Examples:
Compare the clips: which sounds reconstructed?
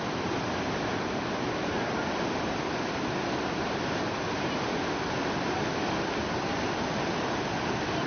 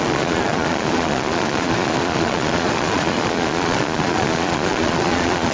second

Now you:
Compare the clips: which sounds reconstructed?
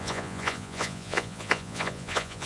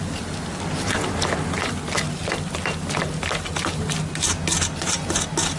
first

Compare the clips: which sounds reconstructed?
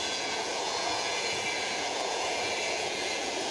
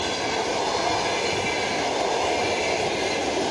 first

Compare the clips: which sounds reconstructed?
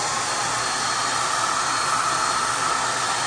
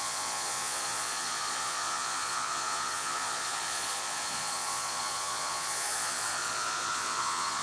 second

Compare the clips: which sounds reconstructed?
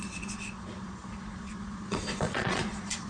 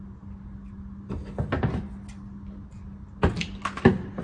first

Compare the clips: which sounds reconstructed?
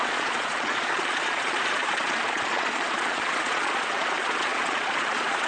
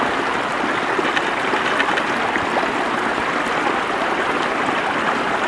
first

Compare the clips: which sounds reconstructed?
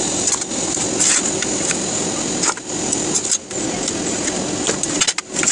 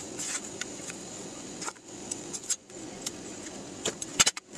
second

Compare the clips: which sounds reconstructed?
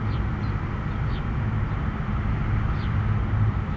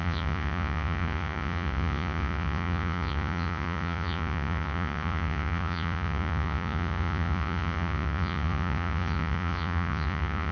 second